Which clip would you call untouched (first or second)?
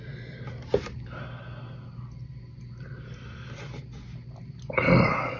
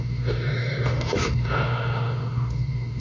first